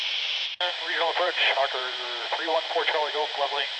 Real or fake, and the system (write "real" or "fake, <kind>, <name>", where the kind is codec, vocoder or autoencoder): fake, vocoder, BigVGAN v2